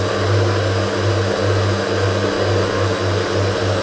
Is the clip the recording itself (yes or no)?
yes